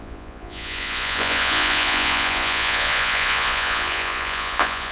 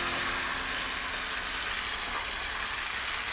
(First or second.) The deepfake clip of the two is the first